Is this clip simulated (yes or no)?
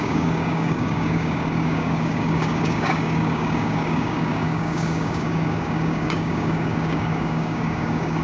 yes